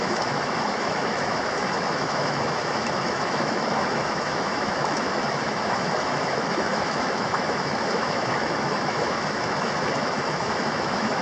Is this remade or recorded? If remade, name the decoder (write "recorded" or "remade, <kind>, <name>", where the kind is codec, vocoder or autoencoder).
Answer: remade, autoencoder, DAC-VAE